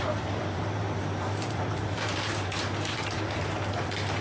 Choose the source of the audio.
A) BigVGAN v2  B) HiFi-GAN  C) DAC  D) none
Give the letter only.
A